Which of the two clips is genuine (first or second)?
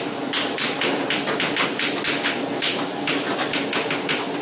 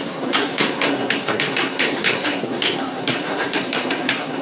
first